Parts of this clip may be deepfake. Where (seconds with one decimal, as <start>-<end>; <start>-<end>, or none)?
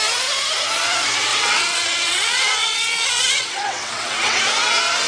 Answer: 1.3-4.4